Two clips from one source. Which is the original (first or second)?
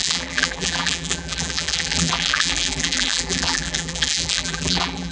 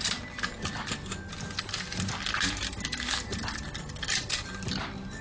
second